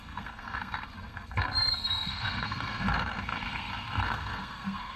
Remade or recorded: remade